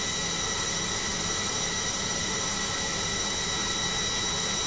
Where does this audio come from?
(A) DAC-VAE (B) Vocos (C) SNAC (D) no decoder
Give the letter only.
D